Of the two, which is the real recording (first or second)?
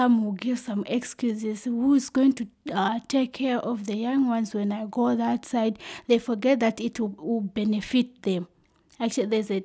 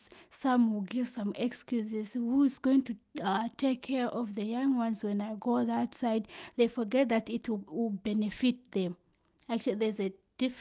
first